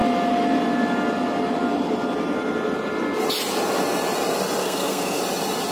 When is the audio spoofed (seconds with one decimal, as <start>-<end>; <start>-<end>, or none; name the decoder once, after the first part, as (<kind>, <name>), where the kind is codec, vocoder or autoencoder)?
4.6-5.2 (codec, SNAC)